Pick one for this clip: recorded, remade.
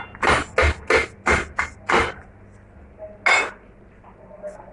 recorded